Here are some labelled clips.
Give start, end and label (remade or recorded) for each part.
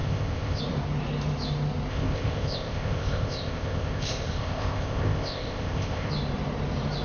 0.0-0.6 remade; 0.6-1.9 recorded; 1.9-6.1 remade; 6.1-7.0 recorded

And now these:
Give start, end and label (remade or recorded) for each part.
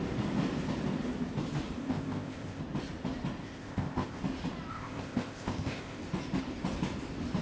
0.0-1.8 recorded; 1.8-2.6 remade; 2.6-3.4 recorded; 3.4-4.2 remade; 4.2-4.7 recorded; 4.7-6.0 remade; 6.0-7.4 recorded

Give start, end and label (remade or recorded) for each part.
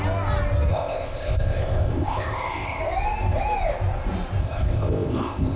0.0-0.7 recorded; 0.7-2.8 remade; 2.8-4.4 recorded; 4.4-5.6 remade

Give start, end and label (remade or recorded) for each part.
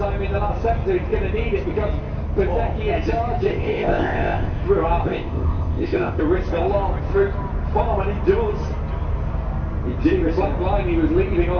0.0-3.5 recorded; 3.5-4.6 remade; 4.6-5.0 recorded; 5.0-6.2 remade; 6.2-11.6 recorded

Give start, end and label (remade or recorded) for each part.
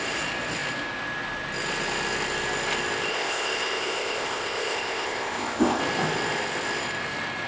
0.0-3.1 recorded; 3.1-5.8 remade; 5.8-7.5 recorded